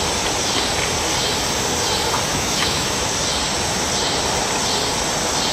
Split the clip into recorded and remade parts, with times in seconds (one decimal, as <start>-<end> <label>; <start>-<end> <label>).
0.0-2.3 recorded; 2.3-3.1 remade; 3.1-5.5 recorded